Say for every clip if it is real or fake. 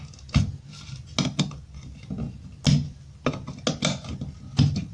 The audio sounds real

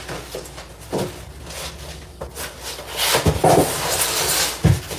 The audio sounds real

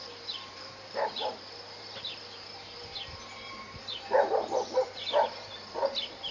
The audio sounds fake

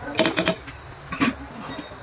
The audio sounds real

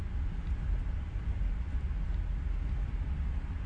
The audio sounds real